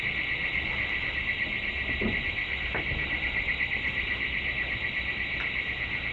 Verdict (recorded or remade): recorded